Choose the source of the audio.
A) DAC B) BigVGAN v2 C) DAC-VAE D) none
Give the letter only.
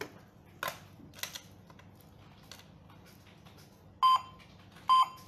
D